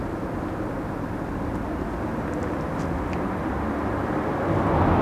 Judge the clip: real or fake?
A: real